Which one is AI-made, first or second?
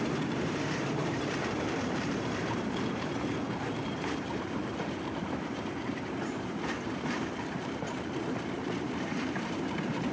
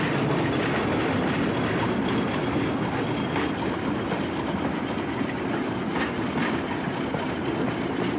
first